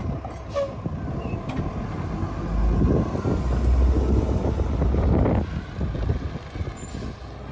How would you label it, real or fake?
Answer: real